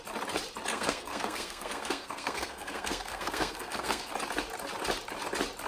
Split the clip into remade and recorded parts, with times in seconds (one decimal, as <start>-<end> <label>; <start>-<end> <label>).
0.0-0.7 recorded; 0.7-4.1 remade; 4.1-5.7 recorded